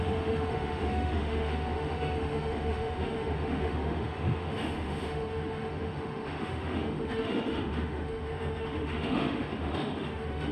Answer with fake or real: fake